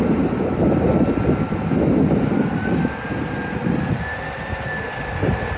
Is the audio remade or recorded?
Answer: recorded